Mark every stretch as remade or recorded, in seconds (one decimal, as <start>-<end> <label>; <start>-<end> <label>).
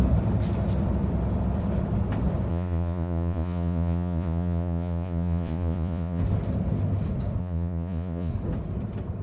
0.0-2.5 recorded; 2.5-6.2 remade; 6.2-7.4 recorded; 7.4-8.3 remade; 8.3-9.2 recorded